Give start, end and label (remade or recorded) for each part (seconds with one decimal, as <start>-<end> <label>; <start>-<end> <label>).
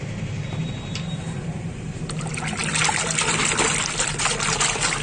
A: 0.0-0.6 recorded; 0.6-2.0 remade; 2.0-2.6 recorded; 2.6-3.4 remade; 3.4-5.0 recorded